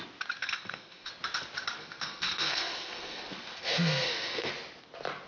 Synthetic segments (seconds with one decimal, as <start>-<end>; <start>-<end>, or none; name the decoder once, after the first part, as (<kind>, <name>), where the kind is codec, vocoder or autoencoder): 0.4-1.1 (codec, SNAC); 1.8-4.5